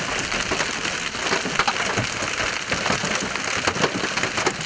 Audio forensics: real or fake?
real